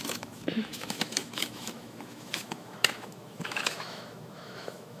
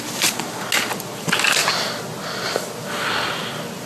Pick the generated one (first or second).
first